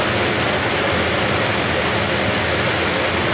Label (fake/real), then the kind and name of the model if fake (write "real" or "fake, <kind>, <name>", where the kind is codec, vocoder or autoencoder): real